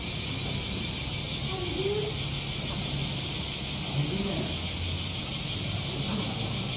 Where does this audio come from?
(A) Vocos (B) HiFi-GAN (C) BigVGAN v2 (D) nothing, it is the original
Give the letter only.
D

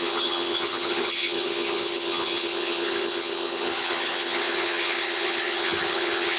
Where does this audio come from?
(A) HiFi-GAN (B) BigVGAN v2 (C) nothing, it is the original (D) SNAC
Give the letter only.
A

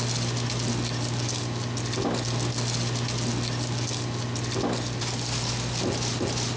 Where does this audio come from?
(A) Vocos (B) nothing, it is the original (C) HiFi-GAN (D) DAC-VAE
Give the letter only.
B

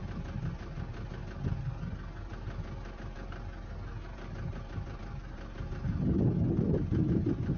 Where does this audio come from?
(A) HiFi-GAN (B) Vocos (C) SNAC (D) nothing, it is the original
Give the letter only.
D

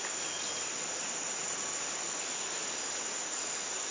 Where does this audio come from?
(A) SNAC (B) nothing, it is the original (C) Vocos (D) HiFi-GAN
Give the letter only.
B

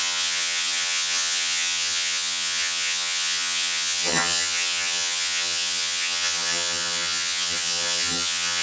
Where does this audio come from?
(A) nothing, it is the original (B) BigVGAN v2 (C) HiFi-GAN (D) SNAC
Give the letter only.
C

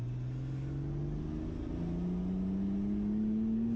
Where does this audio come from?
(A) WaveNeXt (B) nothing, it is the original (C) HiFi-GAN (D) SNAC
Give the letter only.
B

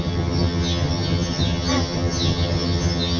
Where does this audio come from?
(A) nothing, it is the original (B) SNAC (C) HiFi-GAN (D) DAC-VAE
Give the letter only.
C